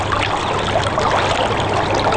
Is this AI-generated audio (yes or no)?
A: no